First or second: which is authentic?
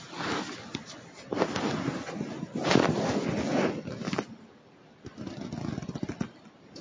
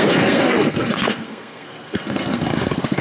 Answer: first